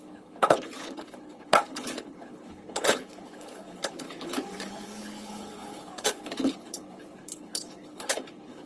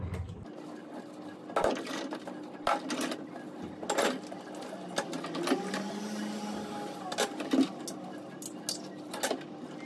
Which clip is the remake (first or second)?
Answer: first